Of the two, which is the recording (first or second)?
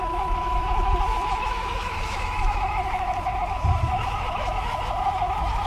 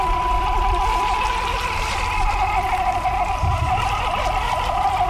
second